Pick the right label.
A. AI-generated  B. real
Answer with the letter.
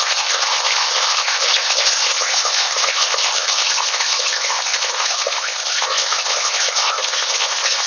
A